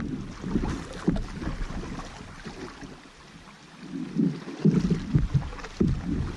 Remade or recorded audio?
recorded